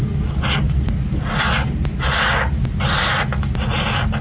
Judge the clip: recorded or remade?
recorded